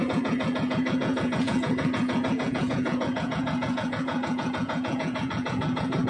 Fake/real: fake